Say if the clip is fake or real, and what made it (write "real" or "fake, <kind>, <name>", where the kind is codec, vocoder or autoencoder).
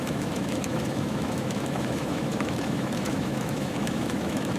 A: fake, autoencoder, DAC-VAE